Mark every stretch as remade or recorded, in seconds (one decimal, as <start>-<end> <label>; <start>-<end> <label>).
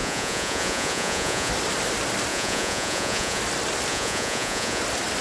0.0-1.5 remade; 1.5-2.3 recorded; 2.3-3.4 remade; 3.4-3.9 recorded; 3.9-4.8 remade; 4.8-5.2 recorded